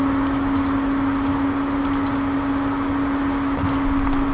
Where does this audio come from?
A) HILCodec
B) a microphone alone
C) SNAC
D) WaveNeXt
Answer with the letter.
B